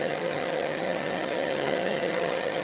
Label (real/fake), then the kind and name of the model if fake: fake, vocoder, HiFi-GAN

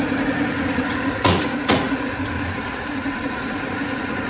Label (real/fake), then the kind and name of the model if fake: fake, vocoder, Vocos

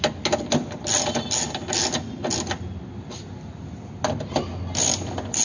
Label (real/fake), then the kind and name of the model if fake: real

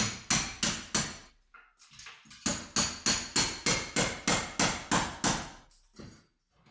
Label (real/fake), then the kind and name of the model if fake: real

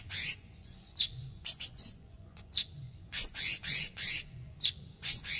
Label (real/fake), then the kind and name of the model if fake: fake, vocoder, Vocos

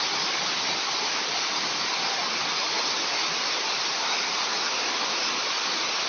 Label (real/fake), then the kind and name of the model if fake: real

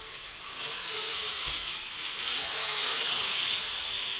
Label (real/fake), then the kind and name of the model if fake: fake, codec, SNAC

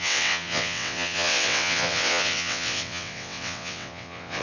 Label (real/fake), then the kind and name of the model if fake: fake, vocoder, WaveNeXt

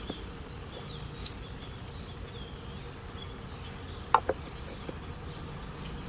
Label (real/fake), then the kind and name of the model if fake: real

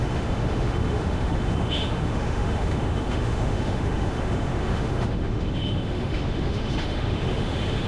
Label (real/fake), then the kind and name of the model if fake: fake, autoencoder, DAC-VAE